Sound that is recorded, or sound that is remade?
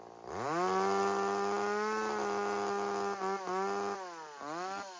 recorded